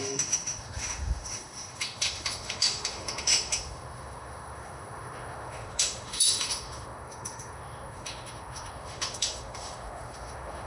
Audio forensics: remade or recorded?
remade